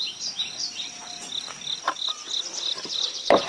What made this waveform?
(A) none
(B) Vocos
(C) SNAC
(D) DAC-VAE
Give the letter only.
A